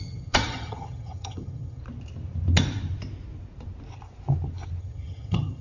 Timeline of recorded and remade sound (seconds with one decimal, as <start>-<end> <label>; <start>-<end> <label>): 0.0-1.8 remade; 1.8-4.8 recorded; 4.8-5.6 remade